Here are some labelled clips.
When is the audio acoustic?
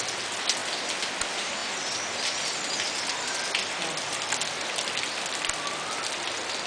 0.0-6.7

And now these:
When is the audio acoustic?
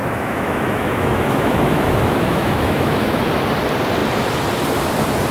3.2-5.3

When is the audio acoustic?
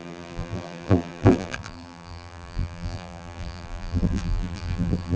none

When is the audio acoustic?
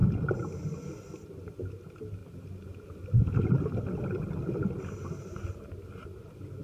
0.0-6.6